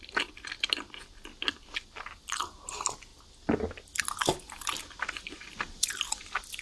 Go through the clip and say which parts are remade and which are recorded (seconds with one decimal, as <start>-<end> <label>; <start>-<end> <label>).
0.0-6.6 recorded